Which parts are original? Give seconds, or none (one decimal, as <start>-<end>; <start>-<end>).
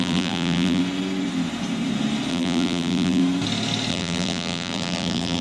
0.8-2.3; 3.2-3.9